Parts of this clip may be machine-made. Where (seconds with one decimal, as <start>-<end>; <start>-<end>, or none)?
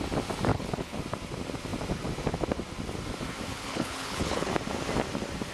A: 0.5-1.0; 3.5-4.5